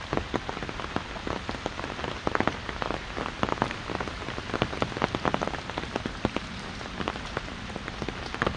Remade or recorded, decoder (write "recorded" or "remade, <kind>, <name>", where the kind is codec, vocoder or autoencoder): recorded